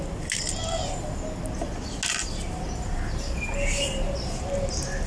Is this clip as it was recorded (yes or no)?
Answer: yes